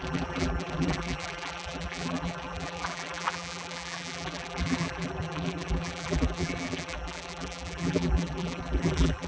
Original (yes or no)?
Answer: no